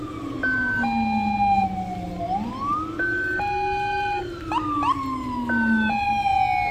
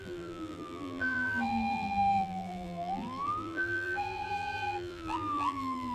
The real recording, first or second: first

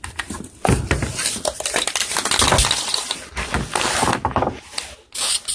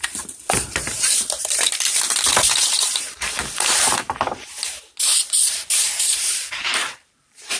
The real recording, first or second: first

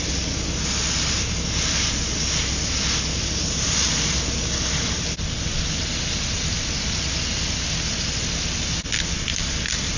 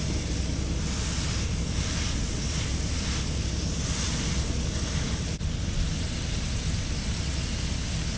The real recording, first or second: first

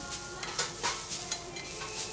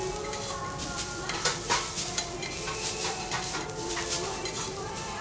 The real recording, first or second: first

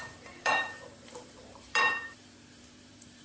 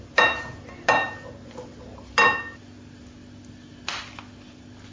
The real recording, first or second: second